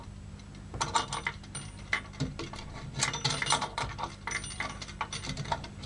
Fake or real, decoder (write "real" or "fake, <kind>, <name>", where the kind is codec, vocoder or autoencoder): real